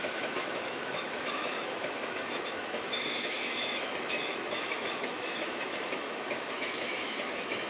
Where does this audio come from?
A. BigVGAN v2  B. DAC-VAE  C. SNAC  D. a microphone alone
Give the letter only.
B